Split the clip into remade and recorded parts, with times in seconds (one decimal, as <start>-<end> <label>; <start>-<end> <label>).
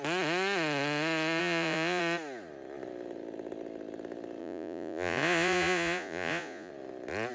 0.0-1.4 recorded; 1.4-2.0 remade; 2.0-4.4 recorded; 4.4-6.7 remade; 6.7-7.3 recorded